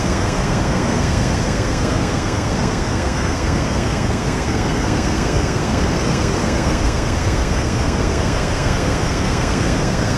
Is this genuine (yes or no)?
no